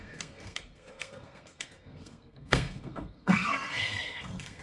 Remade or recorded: remade